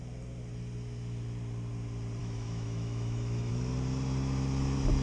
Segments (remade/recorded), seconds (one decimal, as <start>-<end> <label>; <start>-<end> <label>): 0.0-2.2 recorded; 2.2-3.5 remade; 3.5-5.0 recorded